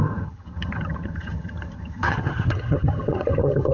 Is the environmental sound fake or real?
fake